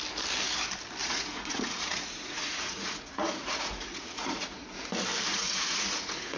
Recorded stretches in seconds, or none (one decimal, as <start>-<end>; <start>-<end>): 0.0-1.0; 4.8-5.3